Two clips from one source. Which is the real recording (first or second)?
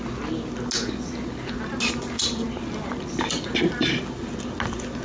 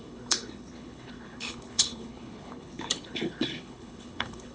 first